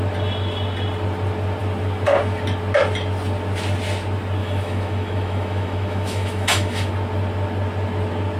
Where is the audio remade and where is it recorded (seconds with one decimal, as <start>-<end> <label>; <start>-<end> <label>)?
0.0-4.4 recorded; 4.4-6.9 remade; 6.9-8.4 recorded